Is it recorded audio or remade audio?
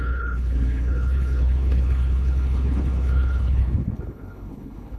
remade